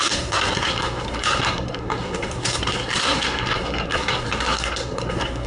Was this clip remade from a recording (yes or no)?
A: yes